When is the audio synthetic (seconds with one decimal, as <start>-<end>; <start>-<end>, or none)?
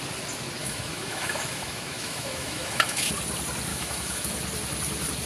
0.6-3.1; 3.7-4.2